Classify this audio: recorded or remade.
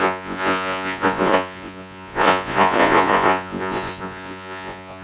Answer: remade